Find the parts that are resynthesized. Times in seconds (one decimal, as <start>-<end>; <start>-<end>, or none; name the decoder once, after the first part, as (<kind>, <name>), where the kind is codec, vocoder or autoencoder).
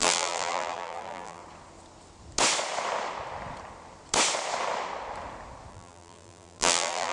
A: 0.0-1.4 (vocoder, BigVGAN v2); 5.7-7.1